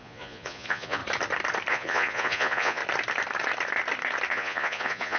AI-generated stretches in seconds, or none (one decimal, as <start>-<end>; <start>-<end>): 0.0-1.0; 1.7-2.8; 4.3-5.2